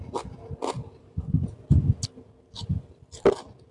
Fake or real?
real